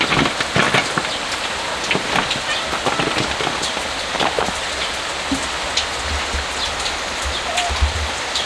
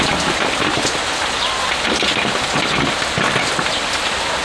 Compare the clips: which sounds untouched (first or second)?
first